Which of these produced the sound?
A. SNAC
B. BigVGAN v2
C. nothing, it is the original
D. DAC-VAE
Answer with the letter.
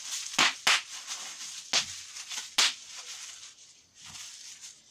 C